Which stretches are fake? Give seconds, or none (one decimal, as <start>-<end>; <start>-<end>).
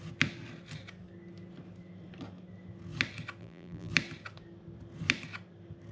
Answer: 3.4-3.9